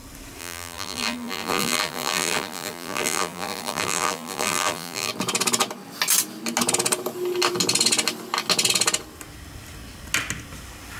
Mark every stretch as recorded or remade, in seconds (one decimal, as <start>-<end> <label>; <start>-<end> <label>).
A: 0.0-0.4 recorded; 0.4-5.1 remade; 5.1-11.0 recorded